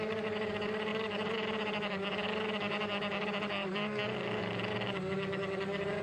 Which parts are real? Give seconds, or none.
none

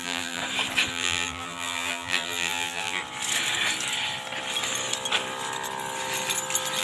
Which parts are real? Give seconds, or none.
0.4-0.9; 3.0-6.8

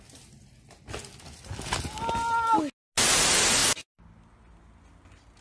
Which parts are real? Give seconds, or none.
0.0-5.4